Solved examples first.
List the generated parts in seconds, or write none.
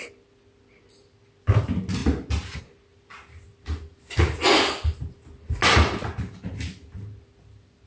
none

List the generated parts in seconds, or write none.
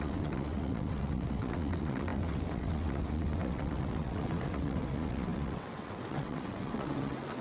0.0-7.4